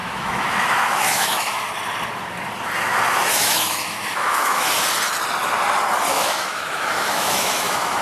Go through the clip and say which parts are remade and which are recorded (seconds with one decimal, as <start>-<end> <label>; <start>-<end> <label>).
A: 0.0-1.6 remade; 1.6-3.4 recorded; 3.4-4.7 remade; 4.7-6.1 recorded; 6.1-8.0 remade